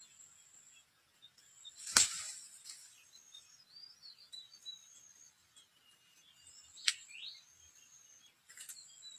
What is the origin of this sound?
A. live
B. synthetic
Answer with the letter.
A